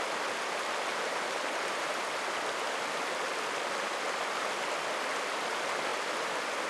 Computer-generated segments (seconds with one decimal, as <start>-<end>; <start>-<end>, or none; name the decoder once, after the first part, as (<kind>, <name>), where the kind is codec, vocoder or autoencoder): 0.9-2.0 (vocoder, BigVGAN v2)